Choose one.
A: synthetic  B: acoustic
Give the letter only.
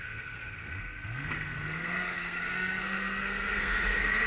A